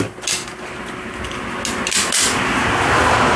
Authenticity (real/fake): real